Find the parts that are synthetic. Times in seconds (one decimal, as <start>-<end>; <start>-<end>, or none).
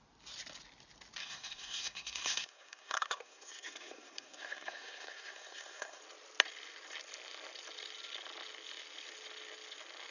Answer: 1.2-6.0